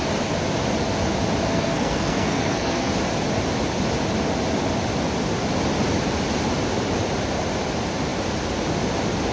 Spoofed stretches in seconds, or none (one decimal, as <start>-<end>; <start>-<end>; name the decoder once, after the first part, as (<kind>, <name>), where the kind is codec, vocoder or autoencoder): 1.5-2.9 (codec, SNAC)

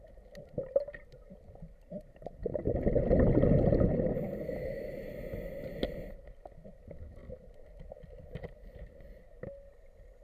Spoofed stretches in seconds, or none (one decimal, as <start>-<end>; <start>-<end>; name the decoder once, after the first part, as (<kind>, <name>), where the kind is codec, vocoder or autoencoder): none

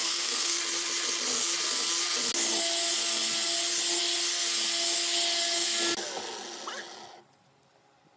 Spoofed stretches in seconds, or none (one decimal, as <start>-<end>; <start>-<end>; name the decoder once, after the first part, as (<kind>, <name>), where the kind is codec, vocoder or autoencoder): 0.0-0.6 (codec, SNAC)